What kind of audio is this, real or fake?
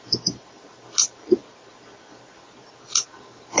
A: real